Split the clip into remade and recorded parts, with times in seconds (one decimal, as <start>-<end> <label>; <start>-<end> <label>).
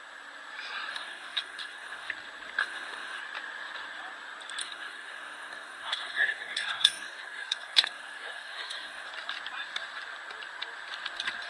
0.0-0.9 recorded; 0.9-2.1 remade; 2.1-2.6 recorded; 2.6-3.2 remade; 3.2-4.6 recorded; 4.6-9.1 remade; 9.1-11.5 recorded